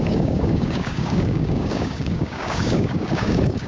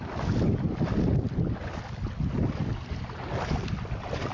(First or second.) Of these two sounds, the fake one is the first